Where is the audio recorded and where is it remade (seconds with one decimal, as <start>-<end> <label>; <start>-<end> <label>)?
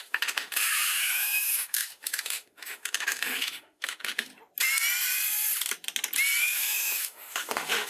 0.0-4.3 remade; 4.3-6.4 recorded; 6.4-7.9 remade